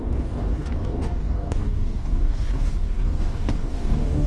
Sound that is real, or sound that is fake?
fake